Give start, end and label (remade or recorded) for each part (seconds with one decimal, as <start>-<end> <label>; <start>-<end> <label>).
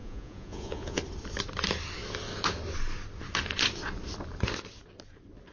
0.0-1.0 remade; 1.0-5.5 recorded